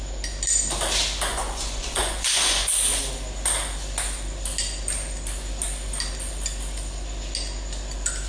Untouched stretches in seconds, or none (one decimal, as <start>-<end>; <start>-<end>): 0.0-1.3; 2.7-8.3